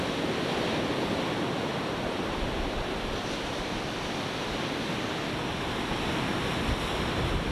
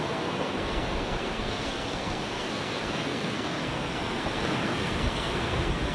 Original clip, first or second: first